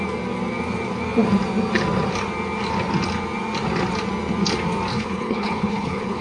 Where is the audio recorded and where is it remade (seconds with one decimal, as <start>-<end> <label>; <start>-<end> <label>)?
0.0-4.9 recorded; 4.9-6.2 remade